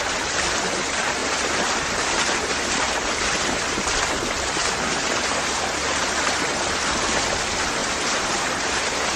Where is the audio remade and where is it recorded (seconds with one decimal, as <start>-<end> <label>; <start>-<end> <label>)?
0.0-1.2 recorded; 1.2-3.8 remade; 3.8-4.6 recorded; 4.6-6.4 remade; 6.4-7.8 recorded; 7.8-9.2 remade